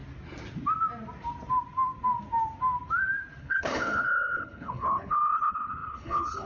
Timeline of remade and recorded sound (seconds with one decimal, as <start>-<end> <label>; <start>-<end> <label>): 0.0-3.4 recorded; 3.4-6.5 remade